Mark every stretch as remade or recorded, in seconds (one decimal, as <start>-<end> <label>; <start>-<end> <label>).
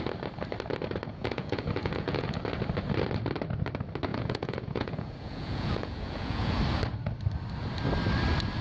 0.0-1.1 recorded; 1.1-2.4 remade; 2.4-4.1 recorded; 4.1-6.6 remade; 6.6-8.6 recorded